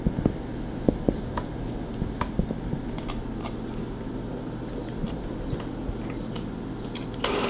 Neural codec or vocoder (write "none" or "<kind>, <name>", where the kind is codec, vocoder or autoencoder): none